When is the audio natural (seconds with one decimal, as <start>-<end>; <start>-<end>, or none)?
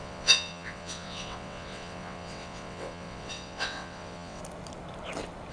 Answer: 4.4-5.5